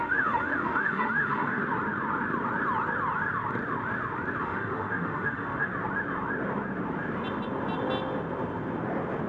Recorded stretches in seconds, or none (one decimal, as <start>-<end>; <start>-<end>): 1.6-4.4; 5.7-9.3